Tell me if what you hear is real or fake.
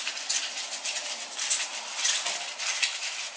real